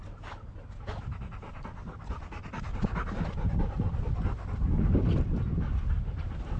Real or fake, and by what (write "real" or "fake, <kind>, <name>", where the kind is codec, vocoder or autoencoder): real